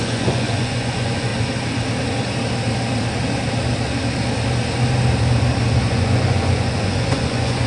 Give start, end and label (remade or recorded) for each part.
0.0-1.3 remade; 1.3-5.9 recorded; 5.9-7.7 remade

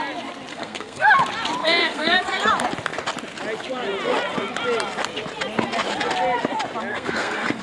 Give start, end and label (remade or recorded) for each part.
0.0-0.5 recorded; 0.5-1.1 remade; 1.1-1.6 recorded; 1.6-2.5 remade; 2.5-6.9 recorded; 6.9-7.6 remade

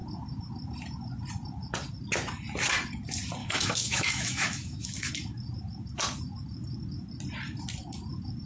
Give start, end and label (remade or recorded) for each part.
0.0-3.4 recorded; 3.4-5.1 remade; 5.1-8.5 recorded

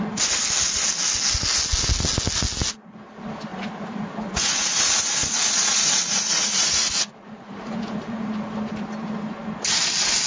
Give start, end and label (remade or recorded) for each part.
0.0-3.5 recorded; 3.5-8.4 remade; 8.4-10.3 recorded

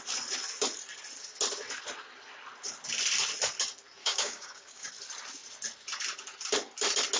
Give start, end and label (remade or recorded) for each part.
0.0-4.0 recorded; 4.0-4.9 remade; 4.9-7.2 recorded

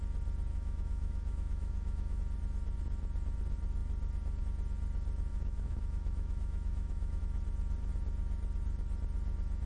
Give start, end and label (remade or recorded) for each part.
0.0-0.5 recorded; 0.5-2.2 remade; 2.2-5.3 recorded; 5.3-7.2 remade; 7.2-9.7 recorded